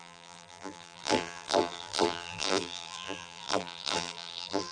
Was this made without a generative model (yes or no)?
no